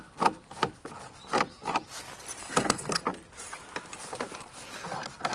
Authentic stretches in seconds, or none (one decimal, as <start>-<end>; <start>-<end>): 0.0-2.4; 3.0-5.3